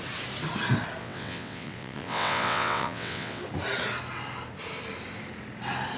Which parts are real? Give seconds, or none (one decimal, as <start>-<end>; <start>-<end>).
0.0-1.0; 3.4-6.0